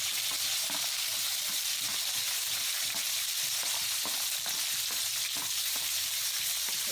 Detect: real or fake fake